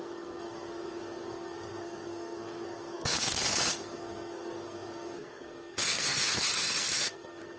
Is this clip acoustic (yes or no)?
no